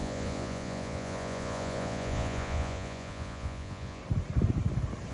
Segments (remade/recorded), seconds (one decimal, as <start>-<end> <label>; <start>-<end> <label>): 0.0-4.0 remade; 4.0-5.1 recorded